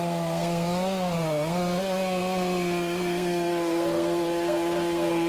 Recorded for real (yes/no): no